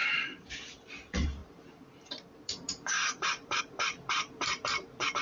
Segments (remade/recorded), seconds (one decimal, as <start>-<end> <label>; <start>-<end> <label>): 0.0-5.2 remade